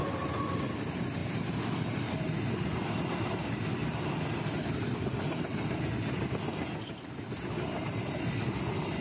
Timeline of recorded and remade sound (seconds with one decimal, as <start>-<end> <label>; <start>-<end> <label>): 0.0-9.0 recorded